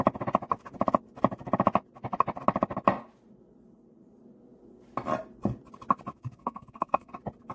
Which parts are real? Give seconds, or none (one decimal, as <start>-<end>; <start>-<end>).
0.0-6.1; 7.1-7.5